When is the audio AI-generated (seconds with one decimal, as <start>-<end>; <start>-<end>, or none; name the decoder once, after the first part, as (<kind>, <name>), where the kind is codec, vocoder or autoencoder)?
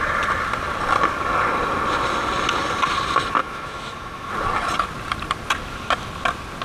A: 3.4-4.3 (autoencoder, DAC-VAE)